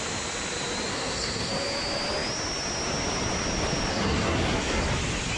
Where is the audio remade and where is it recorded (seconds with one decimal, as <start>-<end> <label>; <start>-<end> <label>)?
0.0-0.9 recorded; 0.9-1.5 remade; 1.5-3.9 recorded; 3.9-4.8 remade; 4.8-5.4 recorded